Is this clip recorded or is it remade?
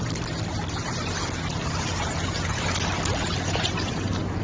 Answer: recorded